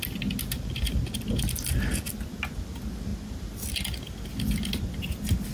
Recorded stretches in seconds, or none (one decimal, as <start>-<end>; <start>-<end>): 0.0-5.5